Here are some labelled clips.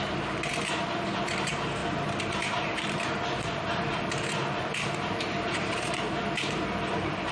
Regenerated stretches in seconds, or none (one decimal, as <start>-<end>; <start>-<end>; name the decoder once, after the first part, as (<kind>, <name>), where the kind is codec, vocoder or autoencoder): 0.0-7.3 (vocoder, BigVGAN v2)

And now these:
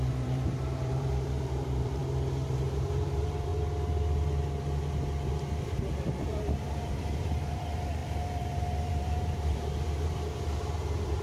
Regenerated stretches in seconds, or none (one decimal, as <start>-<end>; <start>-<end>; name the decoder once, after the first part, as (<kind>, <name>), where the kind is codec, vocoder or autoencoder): 0.0-2.0 (vocoder, BigVGAN v2); 2.5-3.5; 5.6-11.2

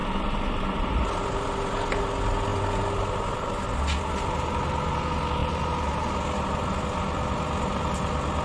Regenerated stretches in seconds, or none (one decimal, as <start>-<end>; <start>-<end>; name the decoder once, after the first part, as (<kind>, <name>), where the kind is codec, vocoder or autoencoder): 0.0-1.0 (vocoder, BigVGAN v2); 5.4-6.1

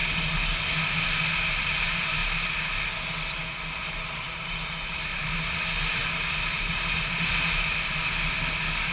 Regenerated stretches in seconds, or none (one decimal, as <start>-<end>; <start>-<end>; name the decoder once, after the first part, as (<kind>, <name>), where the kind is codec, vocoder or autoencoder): 1.6-2.2 (vocoder, BigVGAN v2); 4.9-6.0; 6.5-8.0

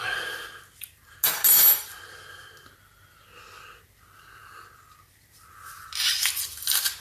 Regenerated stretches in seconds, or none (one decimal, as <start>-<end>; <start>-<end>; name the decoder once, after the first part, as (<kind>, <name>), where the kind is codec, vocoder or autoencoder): none